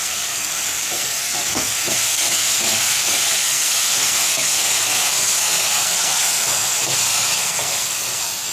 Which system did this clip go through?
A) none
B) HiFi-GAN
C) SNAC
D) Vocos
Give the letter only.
C